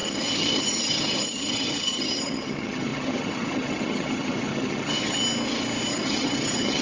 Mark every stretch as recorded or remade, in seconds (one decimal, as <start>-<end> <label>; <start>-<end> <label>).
0.0-5.2 remade; 5.2-5.9 recorded; 5.9-6.8 remade